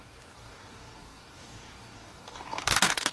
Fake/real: fake